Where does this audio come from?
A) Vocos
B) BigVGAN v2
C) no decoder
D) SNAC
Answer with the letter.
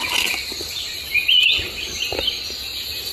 C